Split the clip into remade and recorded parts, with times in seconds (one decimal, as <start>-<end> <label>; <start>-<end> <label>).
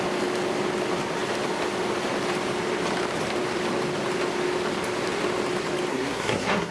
0.0-5.9 recorded; 5.9-6.7 remade